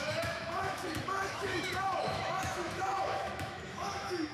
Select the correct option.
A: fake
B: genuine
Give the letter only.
A